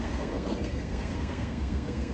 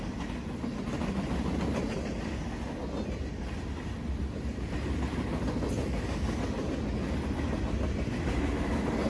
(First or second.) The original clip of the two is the second